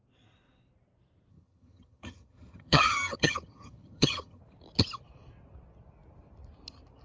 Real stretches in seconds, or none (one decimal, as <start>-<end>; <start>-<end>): 0.0-1.3; 4.4-7.0